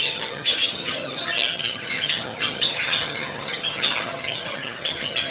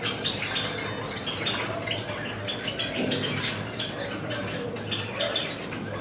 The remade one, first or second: first